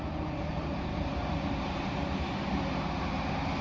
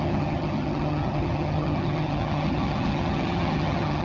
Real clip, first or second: first